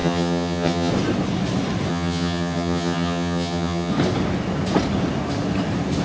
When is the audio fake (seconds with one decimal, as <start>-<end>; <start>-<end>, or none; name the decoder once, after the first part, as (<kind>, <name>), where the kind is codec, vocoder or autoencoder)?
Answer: 0.0-0.9 (vocoder, HiFi-GAN); 1.9-3.9

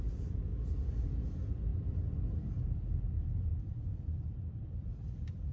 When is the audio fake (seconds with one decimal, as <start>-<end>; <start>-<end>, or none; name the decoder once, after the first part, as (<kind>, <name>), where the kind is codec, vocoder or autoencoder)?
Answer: 0.0-0.5 (vocoder, BigVGAN v2); 1.2-1.7; 2.3-5.5

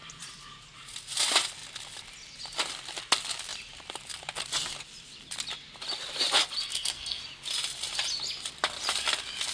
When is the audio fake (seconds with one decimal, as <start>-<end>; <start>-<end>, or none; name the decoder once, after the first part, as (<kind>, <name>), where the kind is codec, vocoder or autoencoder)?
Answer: 6.6-7.2 (codec, SNAC)

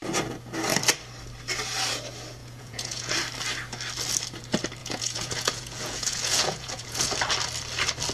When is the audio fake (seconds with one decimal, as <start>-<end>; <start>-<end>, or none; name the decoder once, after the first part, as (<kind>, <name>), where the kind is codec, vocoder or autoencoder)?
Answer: 2.4-3.1 (vocoder, Vocos); 4.8-7.1